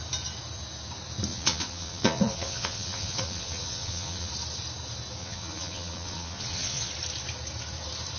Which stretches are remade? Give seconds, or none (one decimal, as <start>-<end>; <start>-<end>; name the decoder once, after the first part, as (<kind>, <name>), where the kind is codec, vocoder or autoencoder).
1.3-4.3 (vocoder, Vocos); 5.2-6.9